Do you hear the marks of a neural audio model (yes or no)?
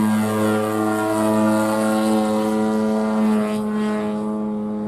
no